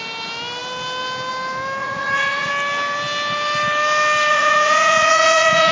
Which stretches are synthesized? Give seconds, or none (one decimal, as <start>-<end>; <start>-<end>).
1.8-2.5; 4.3-5.7